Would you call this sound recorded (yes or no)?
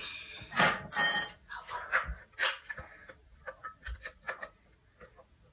yes